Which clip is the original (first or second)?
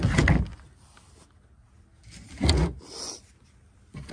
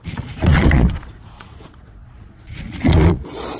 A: first